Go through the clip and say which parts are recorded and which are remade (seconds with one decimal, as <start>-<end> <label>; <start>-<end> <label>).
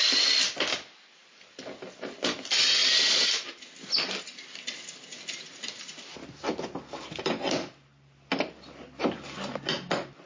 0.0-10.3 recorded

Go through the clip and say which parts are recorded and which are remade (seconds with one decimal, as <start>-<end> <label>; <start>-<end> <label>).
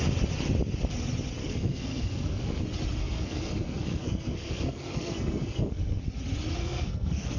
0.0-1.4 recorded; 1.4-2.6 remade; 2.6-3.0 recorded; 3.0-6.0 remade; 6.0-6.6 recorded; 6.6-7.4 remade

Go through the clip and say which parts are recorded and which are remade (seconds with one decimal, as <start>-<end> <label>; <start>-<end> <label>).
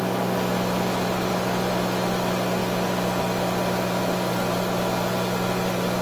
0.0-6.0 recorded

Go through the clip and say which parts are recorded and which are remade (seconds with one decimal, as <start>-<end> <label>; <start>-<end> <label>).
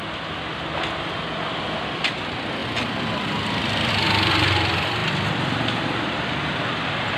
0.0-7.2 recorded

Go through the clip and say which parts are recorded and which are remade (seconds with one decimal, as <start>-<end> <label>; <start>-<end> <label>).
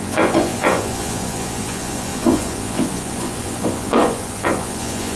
0.0-5.2 remade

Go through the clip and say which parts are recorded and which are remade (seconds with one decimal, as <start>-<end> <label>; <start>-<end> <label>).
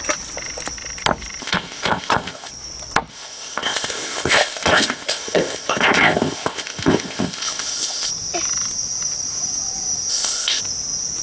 0.0-1.4 recorded; 1.4-2.5 remade; 2.5-3.1 recorded; 3.1-8.1 remade; 8.1-10.1 recorded; 10.1-10.6 remade; 10.6-11.2 recorded